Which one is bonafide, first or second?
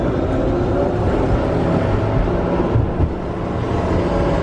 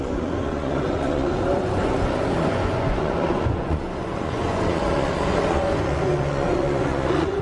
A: first